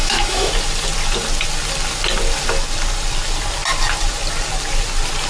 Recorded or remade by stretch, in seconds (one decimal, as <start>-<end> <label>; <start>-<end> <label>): 0.0-0.5 remade; 0.5-5.3 recorded